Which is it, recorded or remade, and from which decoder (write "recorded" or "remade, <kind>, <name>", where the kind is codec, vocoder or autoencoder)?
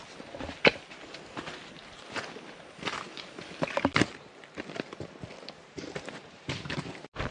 recorded